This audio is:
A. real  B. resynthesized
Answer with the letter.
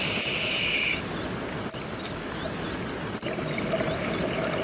A